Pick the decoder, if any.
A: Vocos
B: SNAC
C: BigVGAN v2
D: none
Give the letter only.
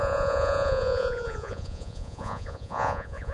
A